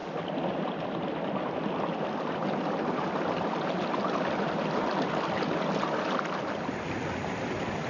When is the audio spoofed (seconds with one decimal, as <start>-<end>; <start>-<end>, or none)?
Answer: none